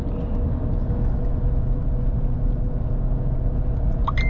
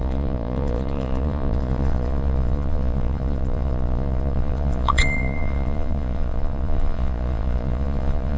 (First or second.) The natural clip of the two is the first